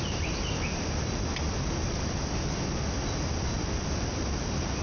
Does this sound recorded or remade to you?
recorded